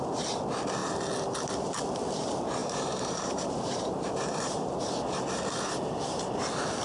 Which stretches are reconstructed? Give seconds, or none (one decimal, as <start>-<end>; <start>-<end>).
2.6-4.8